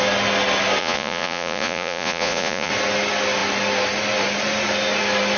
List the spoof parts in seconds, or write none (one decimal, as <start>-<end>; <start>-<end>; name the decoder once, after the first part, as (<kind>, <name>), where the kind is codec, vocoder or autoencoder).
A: 0.8-2.7 (vocoder, Vocos)